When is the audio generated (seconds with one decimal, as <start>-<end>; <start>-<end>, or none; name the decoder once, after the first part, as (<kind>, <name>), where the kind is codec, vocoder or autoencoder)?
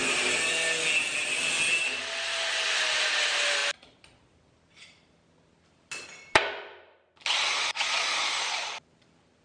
none